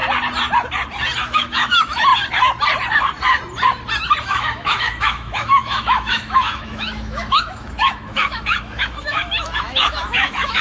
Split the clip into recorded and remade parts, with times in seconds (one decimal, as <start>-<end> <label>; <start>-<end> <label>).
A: 0.0-1.2 recorded; 1.2-2.1 remade; 2.1-4.2 recorded; 4.2-10.6 remade